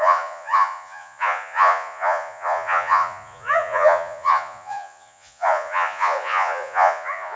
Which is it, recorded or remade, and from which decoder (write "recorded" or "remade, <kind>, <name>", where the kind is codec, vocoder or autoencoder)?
remade, vocoder, Vocos